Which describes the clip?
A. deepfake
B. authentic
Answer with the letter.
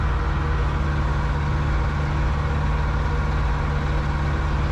B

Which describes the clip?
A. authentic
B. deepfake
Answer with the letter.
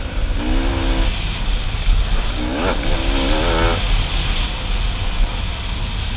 A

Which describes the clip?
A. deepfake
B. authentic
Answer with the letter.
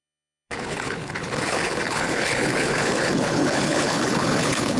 A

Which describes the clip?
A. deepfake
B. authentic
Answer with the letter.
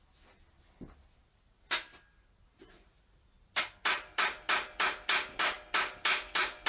B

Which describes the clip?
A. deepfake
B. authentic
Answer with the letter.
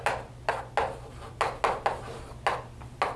B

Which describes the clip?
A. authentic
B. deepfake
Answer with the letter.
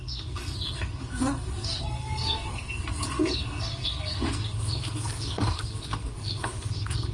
B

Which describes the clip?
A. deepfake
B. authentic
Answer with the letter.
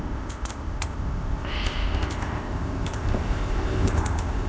A